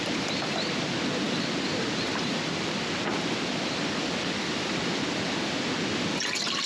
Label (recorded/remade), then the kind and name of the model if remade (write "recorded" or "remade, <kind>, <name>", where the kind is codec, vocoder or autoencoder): remade, vocoder, BigVGAN v2